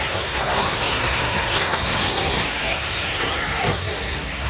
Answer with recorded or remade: remade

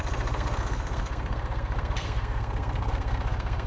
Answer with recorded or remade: remade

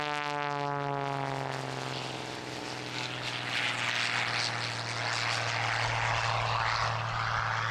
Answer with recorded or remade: recorded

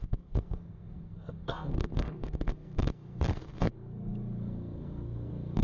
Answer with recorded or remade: remade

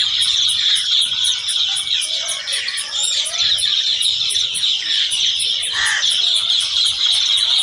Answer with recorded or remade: remade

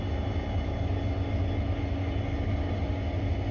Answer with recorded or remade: recorded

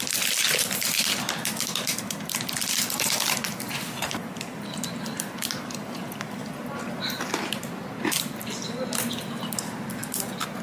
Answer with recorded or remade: recorded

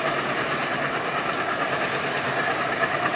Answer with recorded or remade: remade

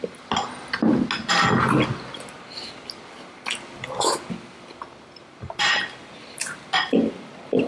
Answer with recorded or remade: recorded